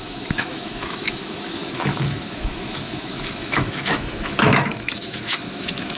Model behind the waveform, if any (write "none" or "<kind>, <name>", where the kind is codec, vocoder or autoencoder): autoencoder, DAC-VAE